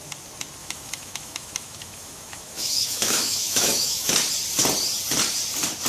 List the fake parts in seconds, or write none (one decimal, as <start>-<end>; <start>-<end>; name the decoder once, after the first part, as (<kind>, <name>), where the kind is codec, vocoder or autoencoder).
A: 0.6-4.1 (autoencoder, DAC-VAE)